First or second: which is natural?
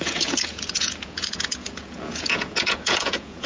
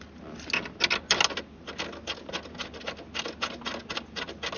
second